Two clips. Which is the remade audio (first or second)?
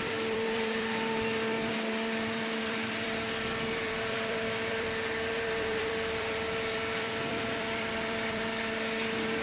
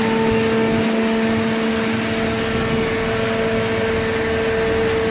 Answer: first